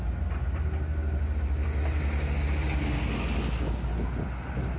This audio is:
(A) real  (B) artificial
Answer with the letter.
A